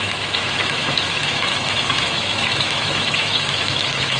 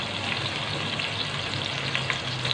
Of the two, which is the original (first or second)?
second